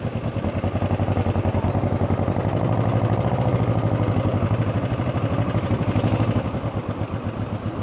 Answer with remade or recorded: recorded